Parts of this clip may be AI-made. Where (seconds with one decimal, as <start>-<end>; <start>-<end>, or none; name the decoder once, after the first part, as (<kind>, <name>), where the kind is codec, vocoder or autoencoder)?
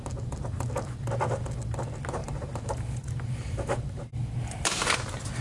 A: 2.2-5.4 (vocoder, BigVGAN v2)